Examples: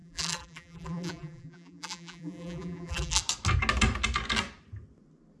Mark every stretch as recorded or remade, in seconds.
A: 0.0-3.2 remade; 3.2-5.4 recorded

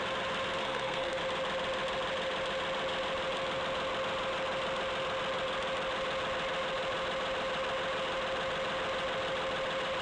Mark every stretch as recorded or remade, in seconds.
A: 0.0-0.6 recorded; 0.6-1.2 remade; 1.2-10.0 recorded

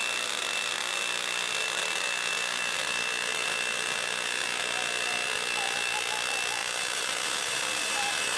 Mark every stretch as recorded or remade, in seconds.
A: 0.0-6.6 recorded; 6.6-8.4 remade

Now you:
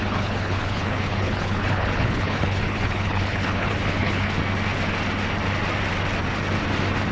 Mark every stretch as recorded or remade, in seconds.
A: 0.0-4.3 remade; 4.3-7.1 recorded